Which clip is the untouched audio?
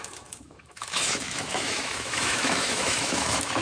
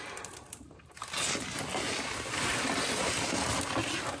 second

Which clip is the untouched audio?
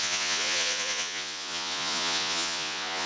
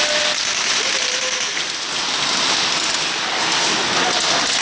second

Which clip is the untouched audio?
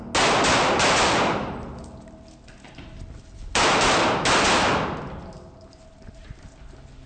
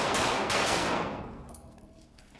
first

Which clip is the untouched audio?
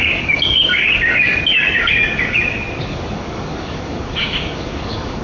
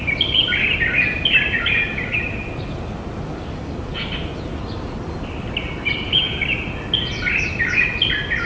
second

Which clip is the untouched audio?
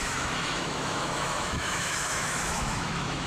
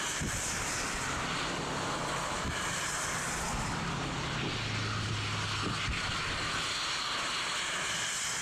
second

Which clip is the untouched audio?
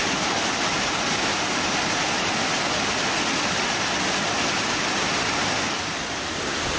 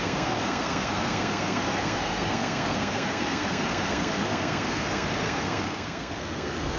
first